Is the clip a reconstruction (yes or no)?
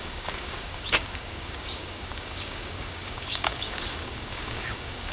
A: yes